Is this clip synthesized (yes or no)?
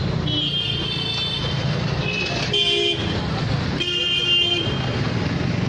no